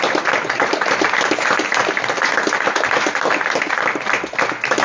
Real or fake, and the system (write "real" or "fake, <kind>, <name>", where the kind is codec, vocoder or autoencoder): real